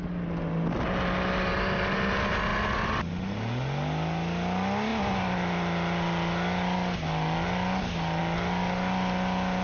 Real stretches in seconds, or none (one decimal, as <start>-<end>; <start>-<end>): 0.0-9.6